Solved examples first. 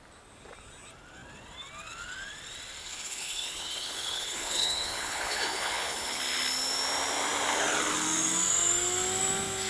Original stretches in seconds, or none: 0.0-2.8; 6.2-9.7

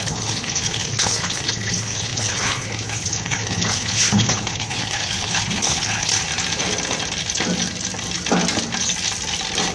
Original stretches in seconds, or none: 6.1-9.7

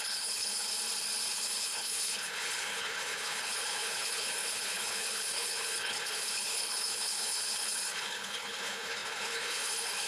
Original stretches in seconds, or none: 0.7-1.3

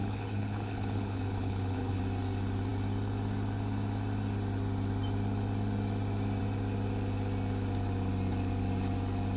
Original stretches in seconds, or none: 2.0-9.4

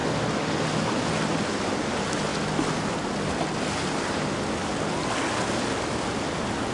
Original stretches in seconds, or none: 0.0-6.7

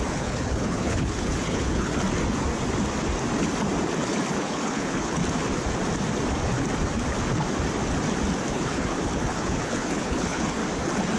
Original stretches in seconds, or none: 1.9-4.3; 5.2-8.5; 10.6-11.2

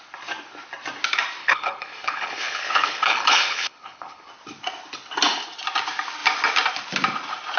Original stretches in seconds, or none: 0.0-1.4; 4.3-7.6

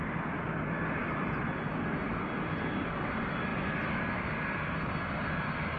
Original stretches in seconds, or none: 0.0-5.8